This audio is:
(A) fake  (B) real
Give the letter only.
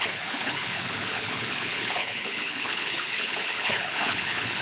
A